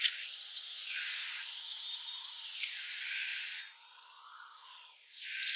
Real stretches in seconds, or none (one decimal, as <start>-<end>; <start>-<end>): 3.3-5.6